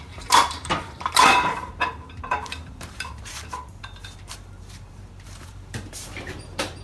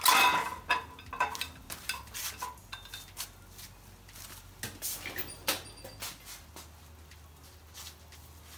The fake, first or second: first